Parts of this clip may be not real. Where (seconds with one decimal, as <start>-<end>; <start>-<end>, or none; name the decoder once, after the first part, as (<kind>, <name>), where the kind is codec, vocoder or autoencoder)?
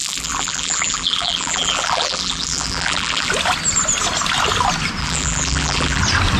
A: 0.0-3.3 (vocoder, BigVGAN v2); 5.0-6.0